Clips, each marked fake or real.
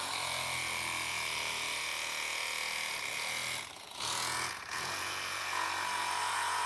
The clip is fake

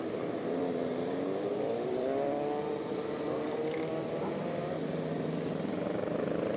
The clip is fake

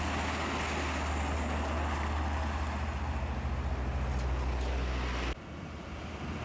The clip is real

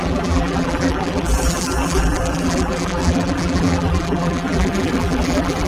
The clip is fake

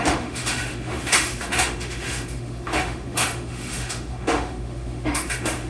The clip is fake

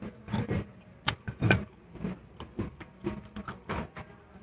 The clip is real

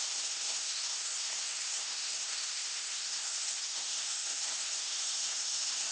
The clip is fake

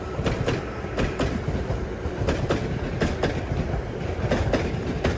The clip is fake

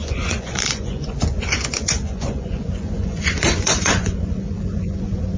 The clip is fake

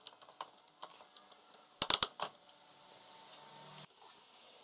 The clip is real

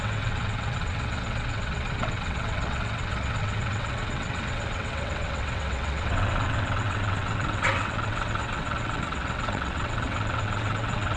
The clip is fake